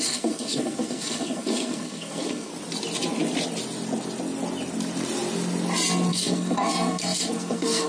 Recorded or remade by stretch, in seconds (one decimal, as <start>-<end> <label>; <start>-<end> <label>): 0.0-2.5 remade; 2.5-6.1 recorded; 6.1-7.9 remade